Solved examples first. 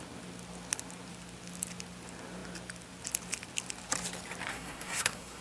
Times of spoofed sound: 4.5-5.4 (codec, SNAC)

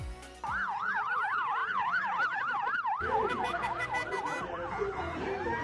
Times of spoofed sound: 1.6-5.0 (vocoder, BigVGAN v2)

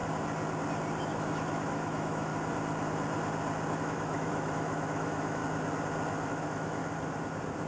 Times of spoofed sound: 1.0-2.3 (autoencoder, DAC-VAE); 3.8-5.4; 6.3-6.8